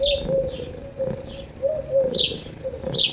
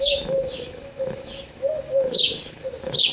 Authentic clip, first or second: first